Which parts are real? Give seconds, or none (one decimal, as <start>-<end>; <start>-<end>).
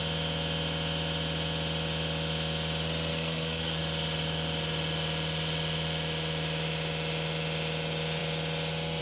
0.0-3.1; 3.8-9.0